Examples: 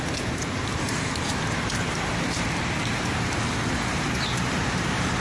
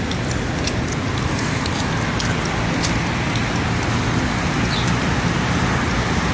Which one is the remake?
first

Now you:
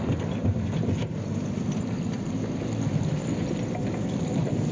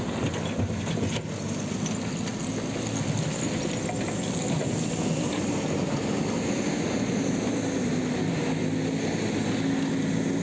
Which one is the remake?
first